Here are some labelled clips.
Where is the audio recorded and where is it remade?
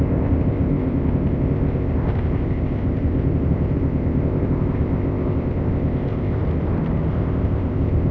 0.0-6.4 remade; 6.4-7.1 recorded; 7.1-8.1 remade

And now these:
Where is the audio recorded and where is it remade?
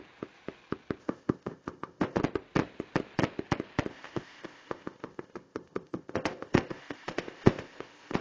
0.0-1.0 recorded; 1.0-2.2 remade; 2.2-3.9 recorded; 3.9-8.2 remade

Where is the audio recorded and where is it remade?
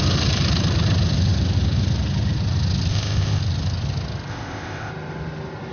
0.0-2.9 recorded; 2.9-3.4 remade; 3.4-4.3 recorded; 4.3-4.9 remade; 4.9-5.7 recorded